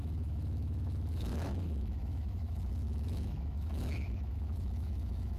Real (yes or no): no